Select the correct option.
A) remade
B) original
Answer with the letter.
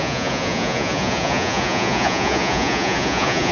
A